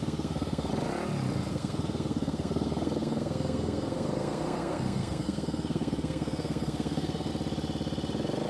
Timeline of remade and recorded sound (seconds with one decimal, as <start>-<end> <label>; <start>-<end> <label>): 0.0-0.7 remade; 0.7-1.5 recorded; 1.5-7.3 remade; 7.3-8.5 recorded